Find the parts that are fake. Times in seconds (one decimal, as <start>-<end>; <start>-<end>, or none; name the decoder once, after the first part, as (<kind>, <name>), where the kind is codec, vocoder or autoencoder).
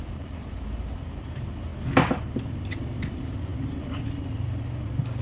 0.0-1.7 (vocoder, BigVGAN v2); 3.1-5.2